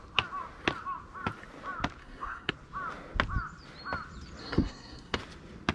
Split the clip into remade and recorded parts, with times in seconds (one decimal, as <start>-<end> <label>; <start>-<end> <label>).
0.0-2.0 recorded; 2.0-2.5 remade; 2.5-4.4 recorded; 4.4-5.2 remade; 5.2-5.7 recorded